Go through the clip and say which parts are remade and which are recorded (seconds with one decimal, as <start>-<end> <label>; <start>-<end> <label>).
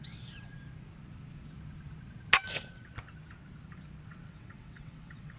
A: 0.0-0.5 remade; 0.5-2.5 recorded; 2.5-2.9 remade; 2.9-4.1 recorded; 4.1-5.4 remade